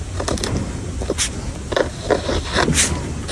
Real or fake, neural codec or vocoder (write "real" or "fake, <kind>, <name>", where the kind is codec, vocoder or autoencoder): real